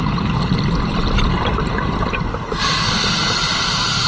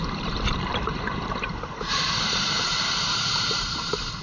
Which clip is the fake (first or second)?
second